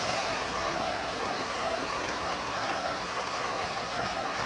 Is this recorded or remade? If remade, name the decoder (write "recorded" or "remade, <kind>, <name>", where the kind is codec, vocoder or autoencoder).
remade, codec, SNAC